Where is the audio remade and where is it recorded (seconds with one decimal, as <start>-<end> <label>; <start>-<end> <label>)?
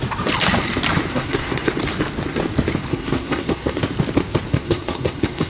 0.0-1.1 recorded; 1.1-1.7 remade; 1.7-2.9 recorded; 2.9-3.8 remade; 3.8-4.5 recorded; 4.5-5.5 remade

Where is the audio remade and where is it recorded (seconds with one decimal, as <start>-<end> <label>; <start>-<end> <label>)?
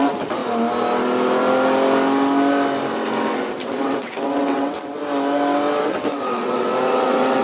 0.0-0.4 remade; 0.4-3.5 recorded; 3.5-5.0 remade; 5.0-5.8 recorded; 5.8-7.4 remade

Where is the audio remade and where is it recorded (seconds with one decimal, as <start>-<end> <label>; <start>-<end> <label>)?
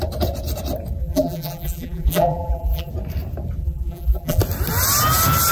0.0-1.0 recorded; 1.0-2.9 remade; 2.9-3.6 recorded; 3.6-4.4 remade; 4.4-5.5 recorded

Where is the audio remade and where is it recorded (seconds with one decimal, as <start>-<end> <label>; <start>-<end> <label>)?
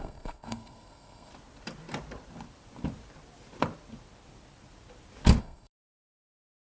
0.0-1.3 remade; 1.3-5.4 recorded; 5.4-6.8 remade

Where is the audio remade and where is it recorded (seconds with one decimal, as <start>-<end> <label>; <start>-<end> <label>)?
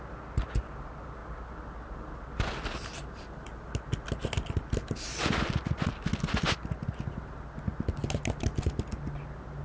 0.0-9.6 recorded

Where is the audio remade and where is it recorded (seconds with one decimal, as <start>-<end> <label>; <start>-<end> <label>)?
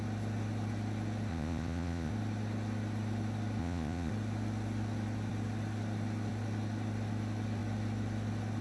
0.0-1.3 recorded; 1.3-2.1 remade; 2.1-3.6 recorded; 3.6-4.1 remade; 4.1-8.6 recorded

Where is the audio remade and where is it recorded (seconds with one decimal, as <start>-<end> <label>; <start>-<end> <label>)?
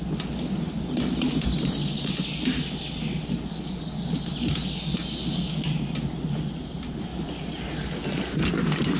0.0-9.0 recorded